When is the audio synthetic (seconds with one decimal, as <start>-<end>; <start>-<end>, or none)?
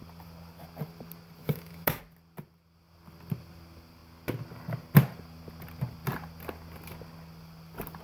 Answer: 1.4-2.0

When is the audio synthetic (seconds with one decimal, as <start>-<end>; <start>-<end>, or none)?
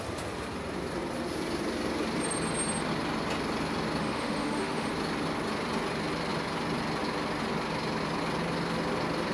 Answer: 4.0-4.9